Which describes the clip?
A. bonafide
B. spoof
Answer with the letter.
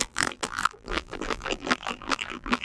B